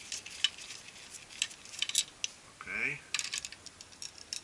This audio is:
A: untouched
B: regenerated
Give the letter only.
A